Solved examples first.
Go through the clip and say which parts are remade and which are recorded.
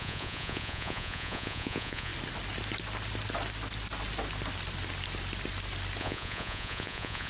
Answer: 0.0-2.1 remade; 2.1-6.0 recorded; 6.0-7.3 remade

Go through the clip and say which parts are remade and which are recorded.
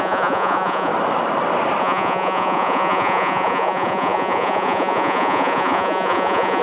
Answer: 0.0-0.9 remade; 0.9-1.8 recorded; 1.8-6.6 remade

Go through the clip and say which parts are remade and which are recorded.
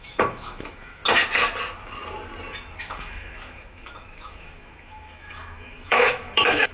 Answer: 0.0-1.0 remade; 1.0-2.8 recorded; 2.8-6.7 remade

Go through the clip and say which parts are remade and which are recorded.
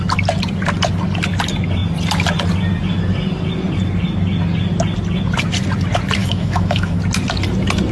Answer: 0.0-6.2 recorded; 6.2-7.0 remade; 7.0-7.9 recorded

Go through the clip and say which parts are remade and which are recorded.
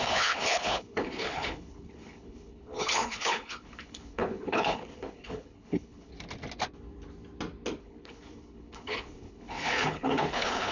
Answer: 0.0-6.1 remade; 6.1-7.8 recorded; 7.8-10.7 remade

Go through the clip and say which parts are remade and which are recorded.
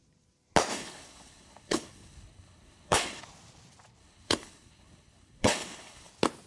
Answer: 0.0-0.7 recorded; 0.7-3.2 remade; 3.2-4.0 recorded; 4.0-6.1 remade; 6.1-6.5 recorded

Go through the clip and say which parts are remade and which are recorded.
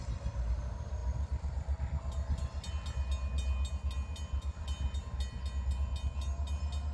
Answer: 0.0-6.9 recorded